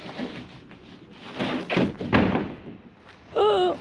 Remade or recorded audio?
recorded